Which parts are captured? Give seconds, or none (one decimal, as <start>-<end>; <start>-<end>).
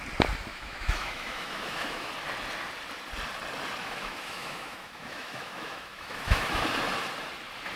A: 0.0-0.5; 2.1-3.8; 6.6-7.8